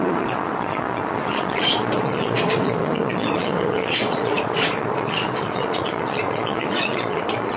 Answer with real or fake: fake